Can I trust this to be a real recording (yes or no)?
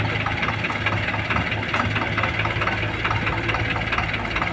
yes